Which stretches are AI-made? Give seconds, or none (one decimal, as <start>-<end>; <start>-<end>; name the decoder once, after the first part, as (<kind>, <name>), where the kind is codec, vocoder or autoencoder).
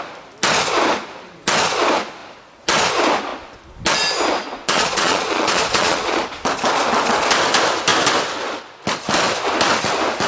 4.6-6.2 (vocoder, Vocos)